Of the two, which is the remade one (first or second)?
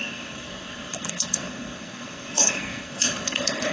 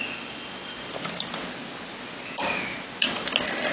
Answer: first